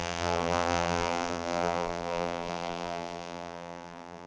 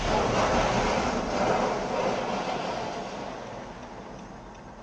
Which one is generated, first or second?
first